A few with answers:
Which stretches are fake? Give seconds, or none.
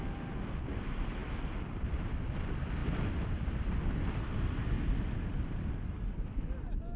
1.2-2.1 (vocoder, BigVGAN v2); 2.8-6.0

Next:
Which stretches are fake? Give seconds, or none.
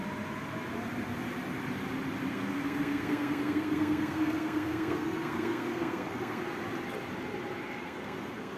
2.3-6.4 (codec, SNAC); 7.8-8.6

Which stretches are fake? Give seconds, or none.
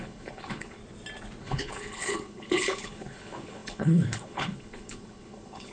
0.0-0.8 (codec, HILCodec); 1.4-5.7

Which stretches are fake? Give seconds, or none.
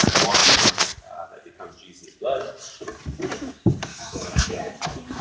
3.9-4.7 (autoencoder, DAC-VAE)